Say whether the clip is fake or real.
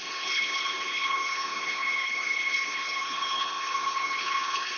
fake